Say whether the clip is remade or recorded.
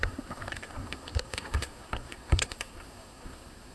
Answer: remade